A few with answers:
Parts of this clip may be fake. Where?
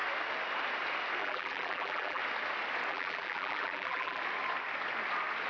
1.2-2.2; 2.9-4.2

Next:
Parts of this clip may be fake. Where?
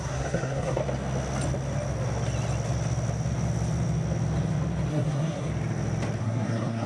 0.0-0.8; 4.9-5.5; 6.2-6.9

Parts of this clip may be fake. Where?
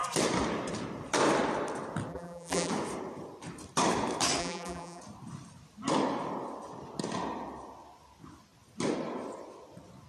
2.1-2.7; 4.4-5.0